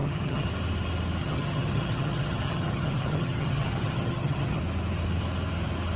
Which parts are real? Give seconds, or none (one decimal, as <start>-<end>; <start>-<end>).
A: 0.5-1.2; 4.6-6.0